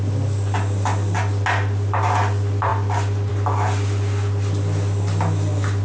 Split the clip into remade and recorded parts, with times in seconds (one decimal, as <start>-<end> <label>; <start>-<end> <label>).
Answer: 0.0-5.8 recorded